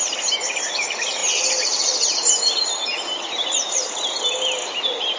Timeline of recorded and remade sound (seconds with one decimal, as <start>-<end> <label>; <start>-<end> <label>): 0.0-5.2 recorded